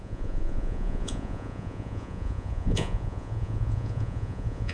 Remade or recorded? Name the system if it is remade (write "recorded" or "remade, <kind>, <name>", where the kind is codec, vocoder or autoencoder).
remade, vocoder, Vocos